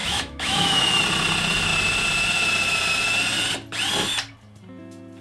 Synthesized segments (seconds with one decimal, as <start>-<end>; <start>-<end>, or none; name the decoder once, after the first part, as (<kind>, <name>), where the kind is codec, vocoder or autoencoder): 0.0-1.0 (autoencoder, DAC-VAE)